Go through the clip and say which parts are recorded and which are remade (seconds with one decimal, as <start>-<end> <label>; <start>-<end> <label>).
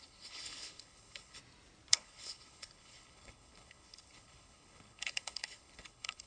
0.0-1.4 remade; 1.4-1.9 recorded; 1.9-6.3 remade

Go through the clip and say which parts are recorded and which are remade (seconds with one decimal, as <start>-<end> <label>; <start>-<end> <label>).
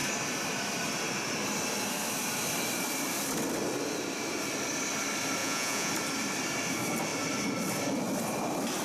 0.0-5.4 recorded; 5.4-5.9 remade; 5.9-8.8 recorded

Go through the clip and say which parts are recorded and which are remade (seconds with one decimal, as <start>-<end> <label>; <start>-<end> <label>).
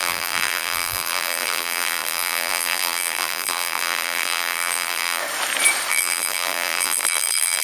0.0-5.2 remade; 5.2-5.9 recorded; 5.9-7.6 remade